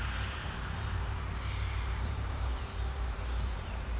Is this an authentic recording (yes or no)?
no